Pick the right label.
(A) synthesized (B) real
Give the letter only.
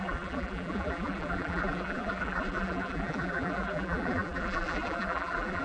A